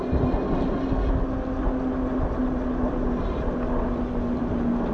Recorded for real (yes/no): yes